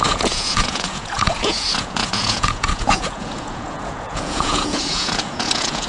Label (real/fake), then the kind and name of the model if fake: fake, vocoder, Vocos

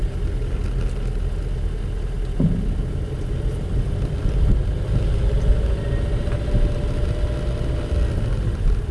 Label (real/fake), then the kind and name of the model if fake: real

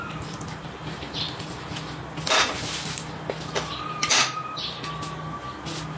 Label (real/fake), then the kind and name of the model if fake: real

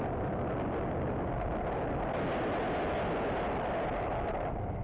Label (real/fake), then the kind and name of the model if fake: real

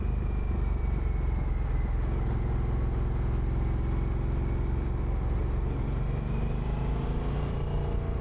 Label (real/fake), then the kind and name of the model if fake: real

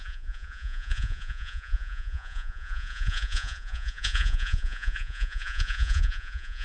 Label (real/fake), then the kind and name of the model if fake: fake, vocoder, Vocos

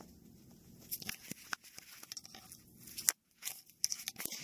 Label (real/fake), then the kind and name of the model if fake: real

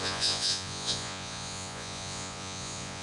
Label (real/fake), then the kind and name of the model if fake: fake, vocoder, Vocos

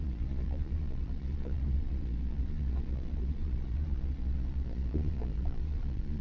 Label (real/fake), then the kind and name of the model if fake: fake, vocoder, Vocos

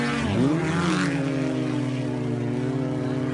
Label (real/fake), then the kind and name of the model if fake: real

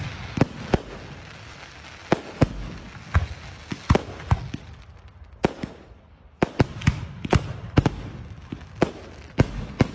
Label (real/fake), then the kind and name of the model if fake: real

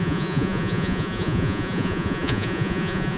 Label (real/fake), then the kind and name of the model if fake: fake, vocoder, Vocos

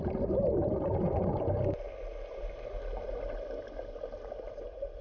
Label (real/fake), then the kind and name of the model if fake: real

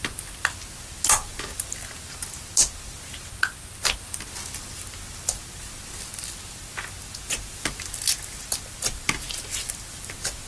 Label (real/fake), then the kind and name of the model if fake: real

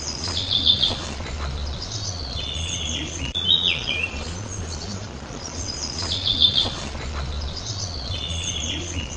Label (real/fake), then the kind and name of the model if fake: fake, vocoder, Vocos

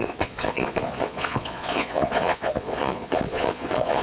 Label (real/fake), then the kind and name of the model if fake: fake, vocoder, Vocos